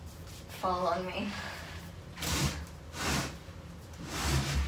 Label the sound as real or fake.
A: real